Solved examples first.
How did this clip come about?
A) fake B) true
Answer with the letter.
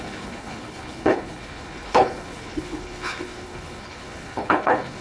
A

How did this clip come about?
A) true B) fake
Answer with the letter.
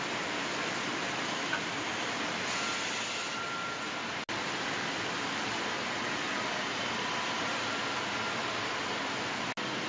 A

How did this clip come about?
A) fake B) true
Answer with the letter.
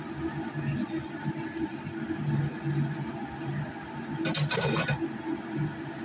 B